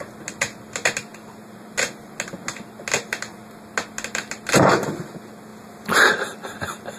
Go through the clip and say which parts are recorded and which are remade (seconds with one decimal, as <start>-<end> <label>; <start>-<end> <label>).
0.0-7.0 recorded